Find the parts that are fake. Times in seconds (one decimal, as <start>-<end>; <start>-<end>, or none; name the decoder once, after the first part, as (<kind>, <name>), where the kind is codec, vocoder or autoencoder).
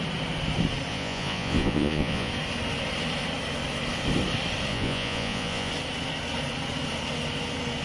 0.9-2.3 (vocoder, Vocos); 4.7-5.7